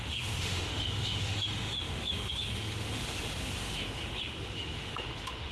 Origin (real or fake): fake